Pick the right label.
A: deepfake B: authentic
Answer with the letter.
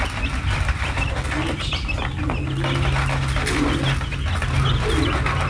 B